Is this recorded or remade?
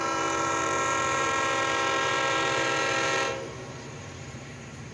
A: remade